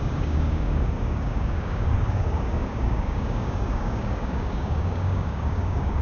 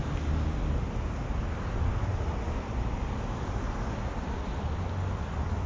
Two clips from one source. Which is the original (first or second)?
second